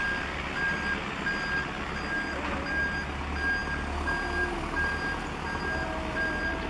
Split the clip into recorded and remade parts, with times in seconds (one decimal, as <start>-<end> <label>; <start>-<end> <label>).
0.0-6.7 recorded